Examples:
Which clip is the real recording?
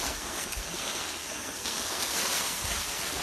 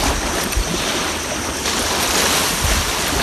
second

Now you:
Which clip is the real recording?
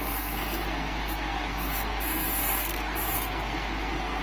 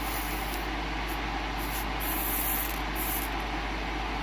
second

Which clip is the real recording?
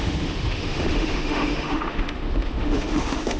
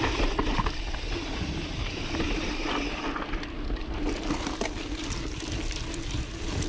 second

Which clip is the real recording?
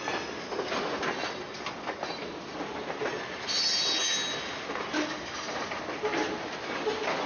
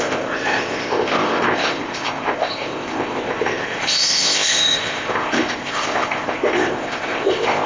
first